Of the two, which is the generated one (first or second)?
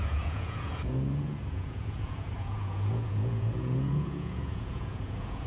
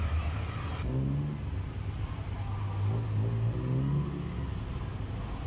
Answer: first